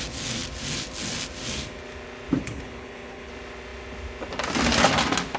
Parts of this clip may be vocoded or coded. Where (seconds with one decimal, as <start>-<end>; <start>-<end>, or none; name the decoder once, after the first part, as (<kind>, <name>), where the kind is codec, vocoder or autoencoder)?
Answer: 2.4-3.3 (codec, HILCodec)